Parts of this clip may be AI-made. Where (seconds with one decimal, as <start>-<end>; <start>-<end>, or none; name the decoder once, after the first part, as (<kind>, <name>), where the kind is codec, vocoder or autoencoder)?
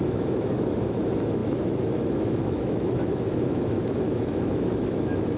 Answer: 0.0-5.4 (autoencoder, DAC-VAE)